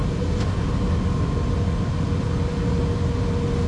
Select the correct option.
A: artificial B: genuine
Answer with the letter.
B